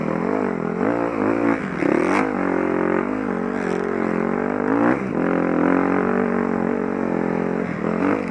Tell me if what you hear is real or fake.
real